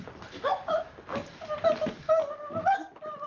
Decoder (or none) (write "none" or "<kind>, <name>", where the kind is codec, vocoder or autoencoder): none